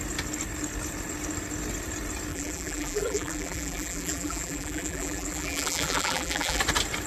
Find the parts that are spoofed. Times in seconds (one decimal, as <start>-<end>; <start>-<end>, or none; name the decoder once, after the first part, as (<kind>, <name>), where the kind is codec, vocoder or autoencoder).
2.3-6.6 (vocoder, BigVGAN v2)